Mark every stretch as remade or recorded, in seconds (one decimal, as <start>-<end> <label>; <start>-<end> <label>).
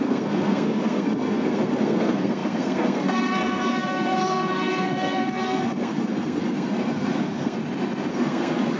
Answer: 0.0-7.6 remade; 7.6-8.1 recorded; 8.1-8.8 remade